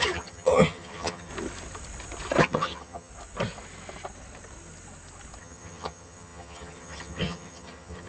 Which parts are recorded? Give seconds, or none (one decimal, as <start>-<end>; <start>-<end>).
1.3-2.4; 3.1-5.4